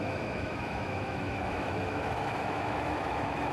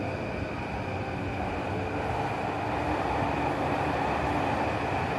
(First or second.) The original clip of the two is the second